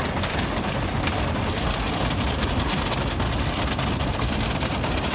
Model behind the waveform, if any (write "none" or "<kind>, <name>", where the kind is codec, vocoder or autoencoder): none